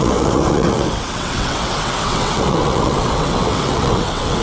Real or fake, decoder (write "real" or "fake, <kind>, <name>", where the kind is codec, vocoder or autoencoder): fake, vocoder, WaveNeXt